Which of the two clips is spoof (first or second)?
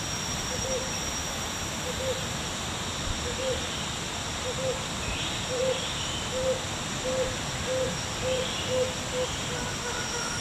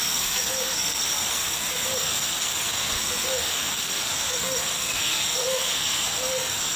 second